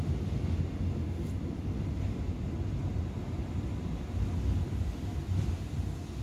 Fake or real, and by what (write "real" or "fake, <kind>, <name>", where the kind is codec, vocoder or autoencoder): real